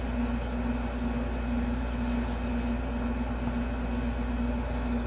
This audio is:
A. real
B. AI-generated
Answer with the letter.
A